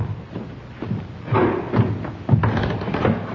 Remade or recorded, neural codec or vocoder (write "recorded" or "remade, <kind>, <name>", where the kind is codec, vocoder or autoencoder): recorded